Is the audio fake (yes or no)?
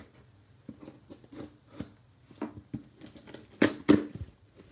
no